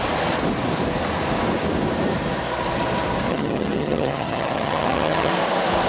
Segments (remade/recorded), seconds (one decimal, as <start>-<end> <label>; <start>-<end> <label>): 0.0-3.3 recorded; 3.3-5.3 remade; 5.3-5.9 recorded